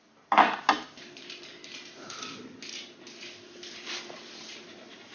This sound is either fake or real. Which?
real